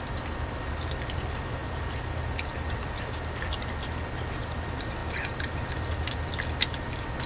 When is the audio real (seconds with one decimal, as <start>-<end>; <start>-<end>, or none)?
0.0-7.3